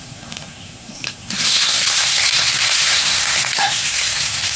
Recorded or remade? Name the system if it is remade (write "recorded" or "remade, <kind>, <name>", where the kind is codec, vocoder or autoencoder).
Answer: remade, codec, SNAC